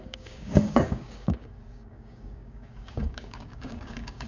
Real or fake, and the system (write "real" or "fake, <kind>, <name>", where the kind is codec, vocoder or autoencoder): fake, codec, DAC